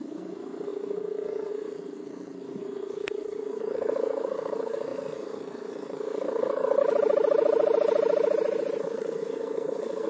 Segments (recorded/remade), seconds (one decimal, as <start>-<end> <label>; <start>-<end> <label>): 0.0-6.8 remade; 6.8-8.8 recorded; 8.8-10.1 remade